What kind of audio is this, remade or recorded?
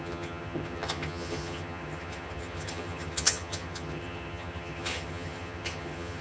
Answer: remade